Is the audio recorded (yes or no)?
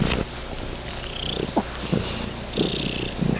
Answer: yes